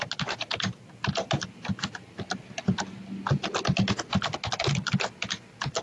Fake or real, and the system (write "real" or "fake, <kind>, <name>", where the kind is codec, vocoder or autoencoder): real